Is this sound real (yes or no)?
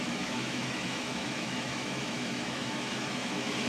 no